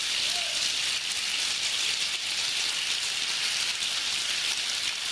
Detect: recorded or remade recorded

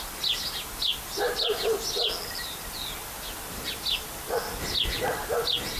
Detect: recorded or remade recorded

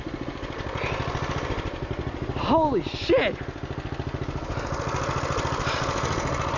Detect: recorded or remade recorded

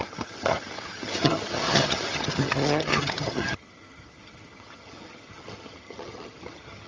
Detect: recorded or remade remade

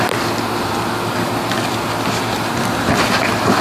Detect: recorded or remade recorded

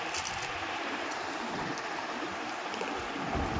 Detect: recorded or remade recorded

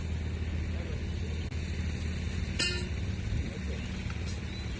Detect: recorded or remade recorded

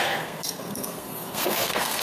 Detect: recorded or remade remade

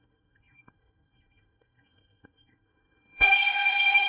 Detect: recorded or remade remade